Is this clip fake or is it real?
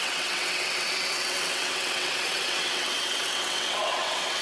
fake